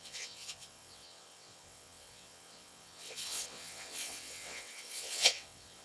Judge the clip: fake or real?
fake